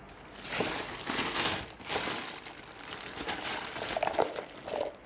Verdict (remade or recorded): recorded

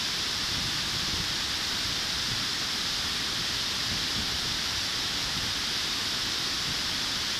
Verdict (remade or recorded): remade